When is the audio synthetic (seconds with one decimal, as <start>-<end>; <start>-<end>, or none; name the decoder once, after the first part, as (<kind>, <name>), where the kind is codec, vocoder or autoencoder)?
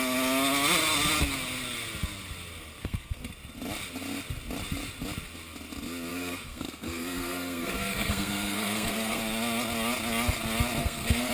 2.8-3.3 (codec, SNAC); 6.1-9.2; 10.8-11.3